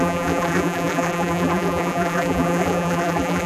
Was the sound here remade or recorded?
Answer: remade